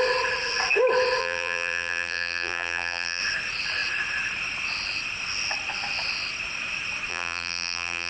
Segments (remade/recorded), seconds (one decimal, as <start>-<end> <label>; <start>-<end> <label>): 0.0-1.2 recorded; 1.2-3.2 remade; 3.2-7.1 recorded; 7.1-8.1 remade